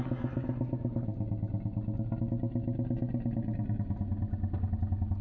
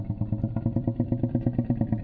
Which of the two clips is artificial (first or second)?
second